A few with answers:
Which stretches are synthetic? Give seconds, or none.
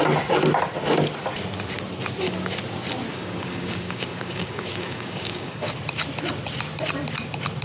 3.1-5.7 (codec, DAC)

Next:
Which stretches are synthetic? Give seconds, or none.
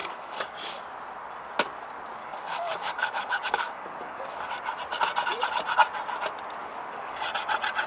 0.0-0.8 (codec, DAC); 2.2-4.5; 6.6-7.2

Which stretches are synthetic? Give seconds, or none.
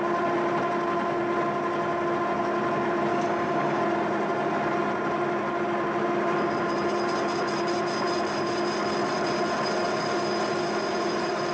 3.1-3.8 (codec, DAC)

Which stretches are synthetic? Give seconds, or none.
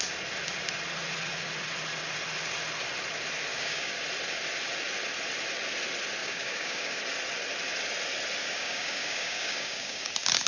3.5-4.0 (codec, DAC); 6.2-7.0; 8.4-10.1